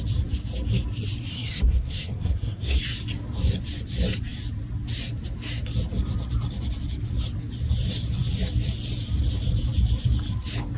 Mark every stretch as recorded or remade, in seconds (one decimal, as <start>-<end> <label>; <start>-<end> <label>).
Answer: 0.0-1.3 recorded; 1.3-2.8 remade; 2.8-10.8 recorded